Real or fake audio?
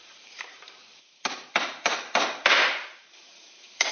fake